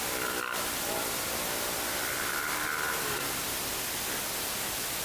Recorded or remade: recorded